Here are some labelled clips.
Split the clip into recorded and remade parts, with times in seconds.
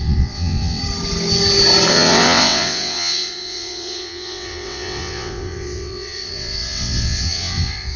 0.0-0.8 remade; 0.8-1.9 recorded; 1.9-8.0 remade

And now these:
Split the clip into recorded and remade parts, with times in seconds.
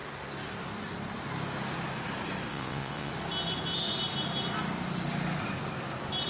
0.0-2.5 recorded; 2.5-3.1 remade; 3.1-6.3 recorded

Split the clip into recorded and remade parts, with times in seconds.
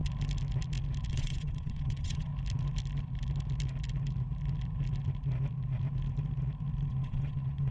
0.0-1.1 recorded; 1.1-2.3 remade; 2.3-6.9 recorded; 6.9-7.7 remade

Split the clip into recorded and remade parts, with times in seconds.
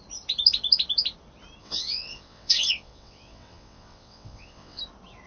0.0-1.6 recorded; 1.6-4.8 remade; 4.8-5.3 recorded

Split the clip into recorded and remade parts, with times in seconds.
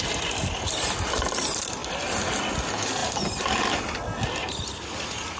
0.0-5.4 recorded